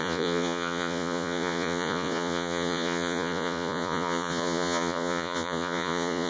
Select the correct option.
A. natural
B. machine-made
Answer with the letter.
B